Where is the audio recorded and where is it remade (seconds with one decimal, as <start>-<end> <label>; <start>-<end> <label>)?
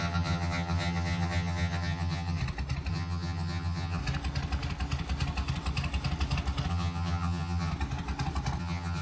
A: 0.0-2.4 remade; 2.4-2.9 recorded; 2.9-4.0 remade; 4.0-6.7 recorded; 6.7-7.7 remade; 7.7-8.6 recorded; 8.6-9.0 remade